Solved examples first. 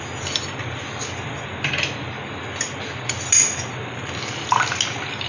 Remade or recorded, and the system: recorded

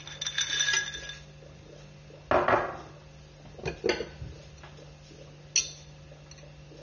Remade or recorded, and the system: recorded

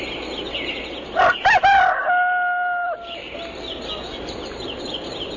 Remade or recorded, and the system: recorded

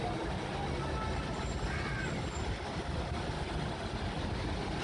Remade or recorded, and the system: recorded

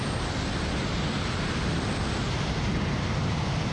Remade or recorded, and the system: recorded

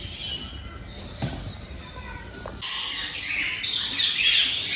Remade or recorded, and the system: recorded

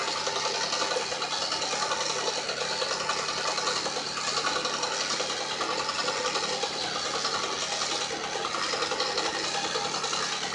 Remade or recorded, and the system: recorded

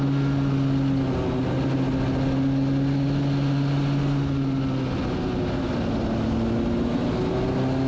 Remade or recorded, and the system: recorded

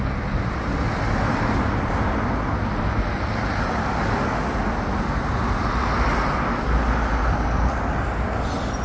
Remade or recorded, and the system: recorded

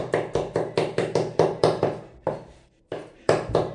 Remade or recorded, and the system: remade, vocoder, BigVGAN v2